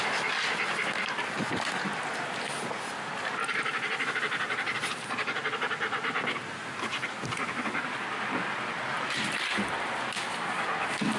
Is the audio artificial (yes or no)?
no